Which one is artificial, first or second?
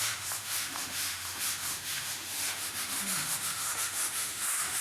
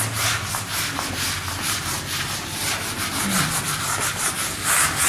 first